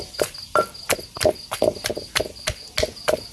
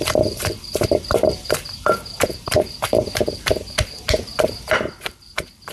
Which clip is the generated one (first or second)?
second